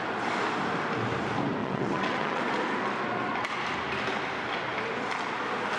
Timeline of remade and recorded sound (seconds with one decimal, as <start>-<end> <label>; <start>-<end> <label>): 0.0-1.6 recorded; 1.6-2.4 remade; 2.4-5.8 recorded